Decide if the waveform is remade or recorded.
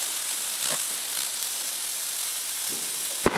recorded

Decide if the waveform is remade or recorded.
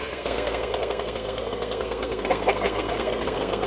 remade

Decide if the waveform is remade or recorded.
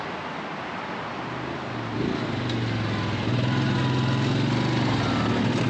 recorded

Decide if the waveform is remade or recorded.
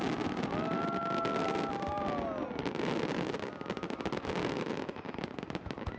recorded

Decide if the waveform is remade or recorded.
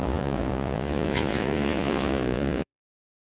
remade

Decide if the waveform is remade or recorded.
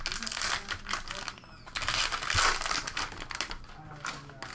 recorded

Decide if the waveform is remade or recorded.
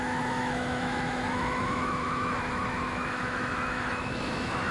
remade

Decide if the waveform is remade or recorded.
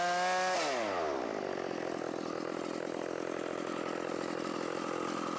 recorded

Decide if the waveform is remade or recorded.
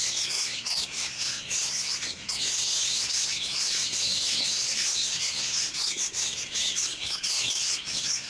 remade